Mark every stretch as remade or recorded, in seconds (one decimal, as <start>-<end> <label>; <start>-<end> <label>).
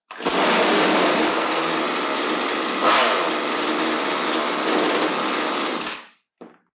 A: 0.0-1.1 recorded; 1.1-1.7 remade; 1.7-6.8 recorded